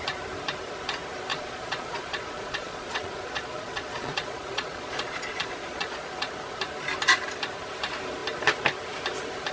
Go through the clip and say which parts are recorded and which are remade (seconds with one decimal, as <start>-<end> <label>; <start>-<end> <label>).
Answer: 0.0-1.3 recorded; 1.3-6.3 remade; 6.3-9.5 recorded